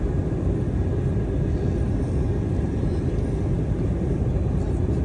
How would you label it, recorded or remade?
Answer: recorded